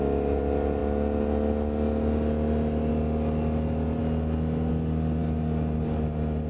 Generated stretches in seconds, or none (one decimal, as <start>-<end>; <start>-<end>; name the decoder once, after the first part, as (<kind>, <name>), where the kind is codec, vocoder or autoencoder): none